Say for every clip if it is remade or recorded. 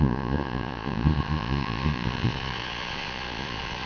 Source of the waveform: remade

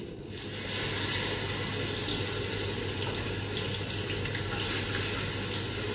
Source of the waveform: recorded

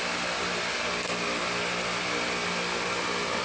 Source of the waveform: recorded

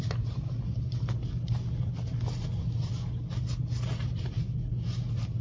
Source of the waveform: recorded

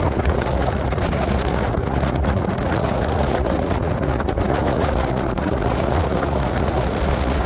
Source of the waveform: remade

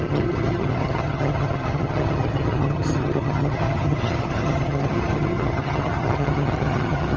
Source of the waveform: remade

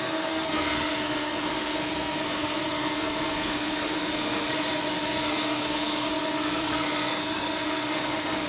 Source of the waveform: remade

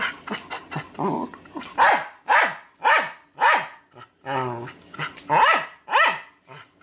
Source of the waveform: recorded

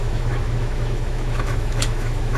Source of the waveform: remade